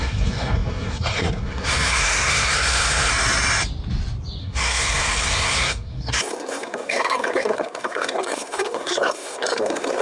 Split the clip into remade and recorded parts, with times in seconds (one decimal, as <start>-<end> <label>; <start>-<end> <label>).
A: 0.0-3.1 remade; 3.1-4.4 recorded; 4.4-10.0 remade